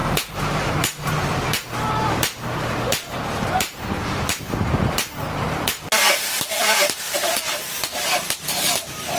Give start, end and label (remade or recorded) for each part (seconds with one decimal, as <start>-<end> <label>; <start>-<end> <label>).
0.0-9.2 remade